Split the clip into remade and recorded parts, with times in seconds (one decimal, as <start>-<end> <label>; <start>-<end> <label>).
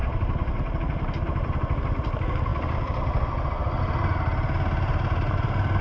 0.0-5.8 recorded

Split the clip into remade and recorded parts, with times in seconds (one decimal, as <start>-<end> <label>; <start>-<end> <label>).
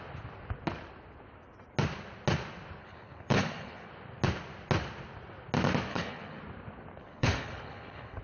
0.0-2.8 recorded; 2.8-3.9 remade; 3.9-5.9 recorded; 5.9-6.4 remade; 6.4-7.0 recorded; 7.0-8.2 remade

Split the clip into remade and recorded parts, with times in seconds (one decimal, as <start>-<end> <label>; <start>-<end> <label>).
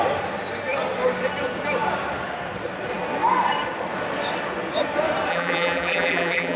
0.0-5.3 recorded; 5.3-6.6 remade